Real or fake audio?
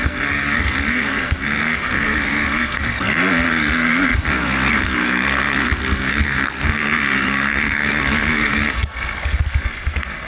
fake